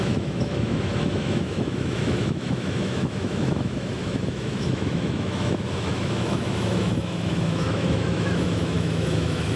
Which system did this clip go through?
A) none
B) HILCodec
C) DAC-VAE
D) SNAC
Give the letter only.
C